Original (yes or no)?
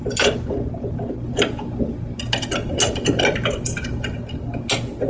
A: yes